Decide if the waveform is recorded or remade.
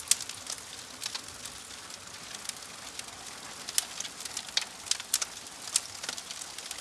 recorded